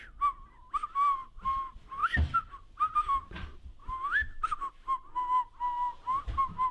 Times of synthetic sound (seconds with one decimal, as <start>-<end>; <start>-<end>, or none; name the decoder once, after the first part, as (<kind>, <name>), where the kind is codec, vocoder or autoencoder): none